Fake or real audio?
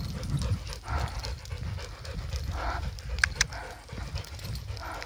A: real